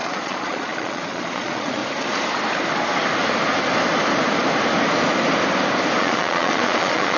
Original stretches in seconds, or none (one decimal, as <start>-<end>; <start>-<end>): 1.8-6.0